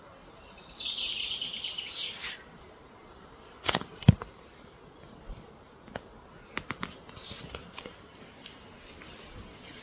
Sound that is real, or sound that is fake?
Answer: real